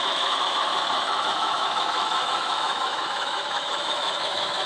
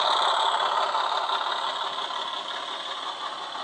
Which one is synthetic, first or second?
first